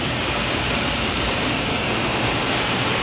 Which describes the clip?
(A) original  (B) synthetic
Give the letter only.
B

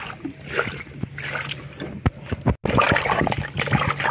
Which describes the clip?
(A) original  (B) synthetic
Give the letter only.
A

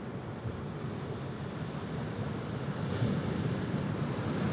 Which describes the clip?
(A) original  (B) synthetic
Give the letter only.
A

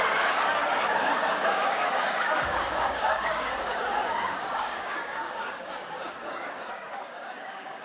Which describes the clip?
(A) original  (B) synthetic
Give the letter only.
B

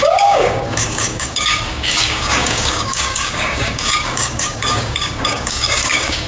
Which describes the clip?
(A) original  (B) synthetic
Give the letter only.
B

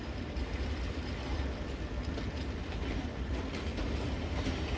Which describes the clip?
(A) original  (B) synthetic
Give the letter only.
A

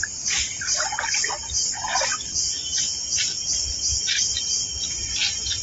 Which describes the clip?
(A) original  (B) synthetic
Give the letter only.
A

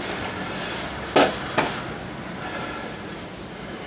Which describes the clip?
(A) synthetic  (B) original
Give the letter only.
B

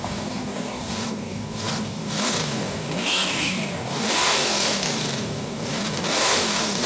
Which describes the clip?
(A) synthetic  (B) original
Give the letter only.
A